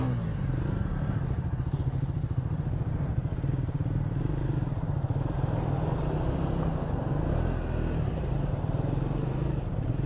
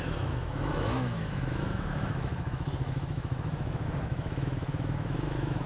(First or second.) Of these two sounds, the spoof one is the second